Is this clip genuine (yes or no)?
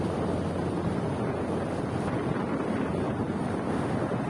yes